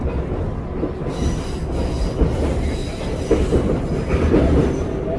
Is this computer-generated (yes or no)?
no